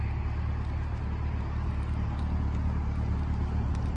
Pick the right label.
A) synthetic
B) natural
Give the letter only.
B